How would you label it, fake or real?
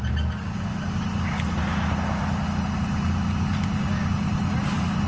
real